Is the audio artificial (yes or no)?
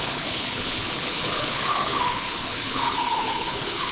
yes